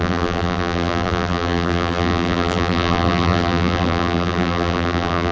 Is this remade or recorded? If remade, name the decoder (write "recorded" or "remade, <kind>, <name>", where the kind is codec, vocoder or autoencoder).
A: remade, vocoder, BigVGAN v2